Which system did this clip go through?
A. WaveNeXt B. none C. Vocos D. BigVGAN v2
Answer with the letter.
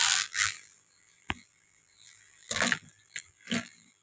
D